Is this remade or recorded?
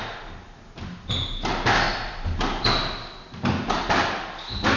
recorded